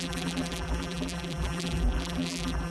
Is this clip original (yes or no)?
no